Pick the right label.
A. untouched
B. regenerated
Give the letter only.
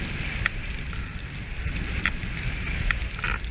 A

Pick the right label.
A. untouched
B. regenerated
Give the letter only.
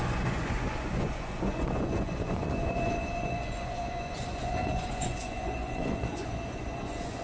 B